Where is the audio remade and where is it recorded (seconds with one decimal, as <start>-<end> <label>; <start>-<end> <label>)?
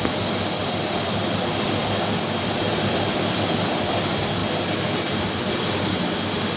0.0-6.6 recorded